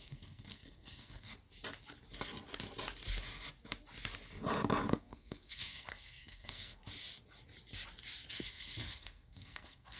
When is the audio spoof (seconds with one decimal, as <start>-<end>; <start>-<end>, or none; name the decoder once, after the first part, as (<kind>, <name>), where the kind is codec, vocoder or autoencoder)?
0.0-1.3 (codec, SNAC); 4.9-6.8; 8.3-10.0